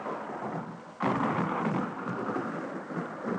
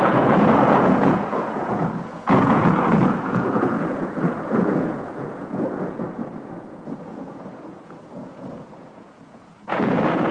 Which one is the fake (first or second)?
second